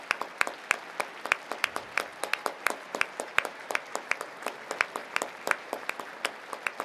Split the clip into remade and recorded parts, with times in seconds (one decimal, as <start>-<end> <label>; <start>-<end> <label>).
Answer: 0.0-2.1 recorded; 2.1-4.6 remade; 4.6-5.0 recorded; 5.0-6.1 remade; 6.1-6.8 recorded